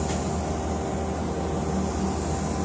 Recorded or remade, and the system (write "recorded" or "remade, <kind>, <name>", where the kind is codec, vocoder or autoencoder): recorded